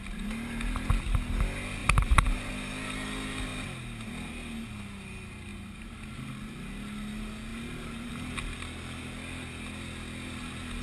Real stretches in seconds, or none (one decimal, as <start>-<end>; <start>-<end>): 0.0-1.8; 2.5-7.5; 8.1-10.8